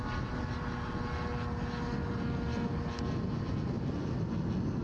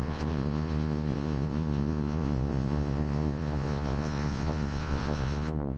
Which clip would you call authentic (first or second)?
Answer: first